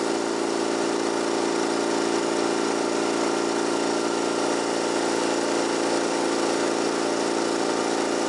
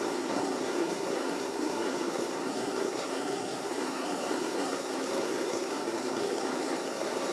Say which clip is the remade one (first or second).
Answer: second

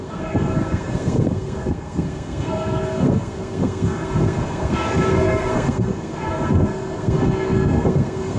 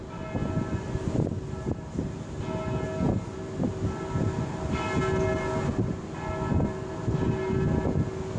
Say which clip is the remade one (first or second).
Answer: first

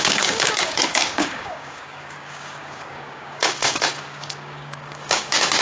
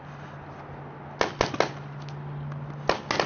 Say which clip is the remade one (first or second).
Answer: first